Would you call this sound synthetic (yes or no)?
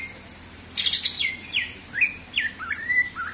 no